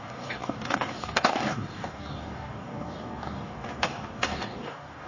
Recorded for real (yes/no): no